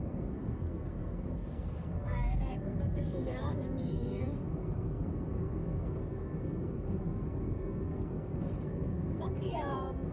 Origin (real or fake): fake